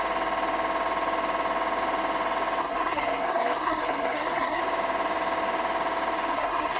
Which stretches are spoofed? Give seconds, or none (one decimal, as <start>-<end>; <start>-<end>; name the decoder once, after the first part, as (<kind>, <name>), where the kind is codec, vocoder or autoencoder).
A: 2.6-4.6 (codec, SNAC); 6.3-6.8